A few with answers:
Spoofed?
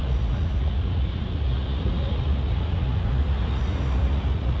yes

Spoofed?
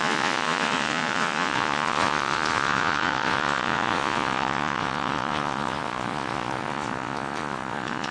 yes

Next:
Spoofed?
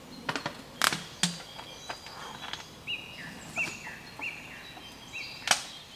no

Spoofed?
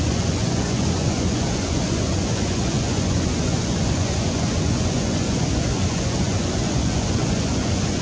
yes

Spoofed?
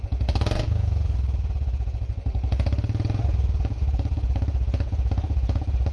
yes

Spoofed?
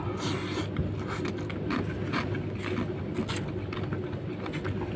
no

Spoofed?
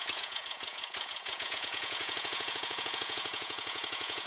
yes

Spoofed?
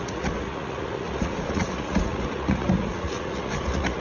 yes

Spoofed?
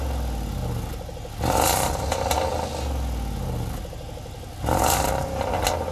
no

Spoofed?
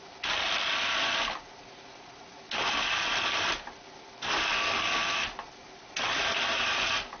no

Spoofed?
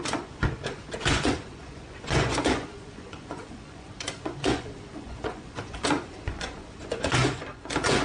yes